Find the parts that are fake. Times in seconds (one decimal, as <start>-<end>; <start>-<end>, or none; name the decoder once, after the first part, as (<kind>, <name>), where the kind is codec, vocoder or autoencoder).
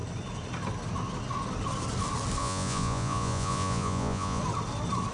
2.4-4.4 (vocoder, Vocos)